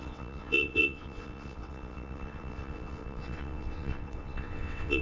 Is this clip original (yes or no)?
no